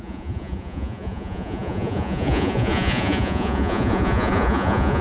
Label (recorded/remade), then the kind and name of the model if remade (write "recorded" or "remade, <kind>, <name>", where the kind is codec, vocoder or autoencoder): remade, vocoder, Vocos